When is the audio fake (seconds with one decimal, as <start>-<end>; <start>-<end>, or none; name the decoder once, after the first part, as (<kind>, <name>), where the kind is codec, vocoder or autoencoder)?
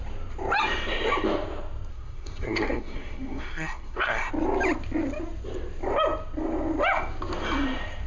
1.9-4.3 (codec, SNAC)